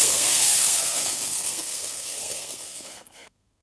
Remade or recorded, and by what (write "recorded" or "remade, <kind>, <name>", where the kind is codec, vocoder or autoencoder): remade, codec, SNAC